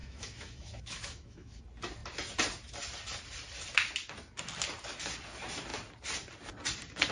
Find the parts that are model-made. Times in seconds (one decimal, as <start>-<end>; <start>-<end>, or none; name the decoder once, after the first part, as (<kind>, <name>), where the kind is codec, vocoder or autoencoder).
0.0-1.6 (autoencoder, DAC-VAE)